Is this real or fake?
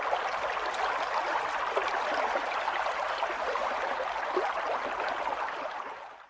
real